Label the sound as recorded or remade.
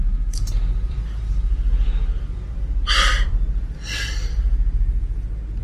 remade